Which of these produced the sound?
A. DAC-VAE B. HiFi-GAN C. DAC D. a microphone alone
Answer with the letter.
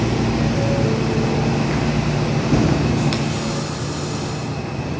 D